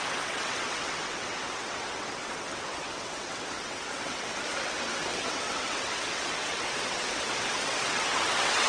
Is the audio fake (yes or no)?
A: yes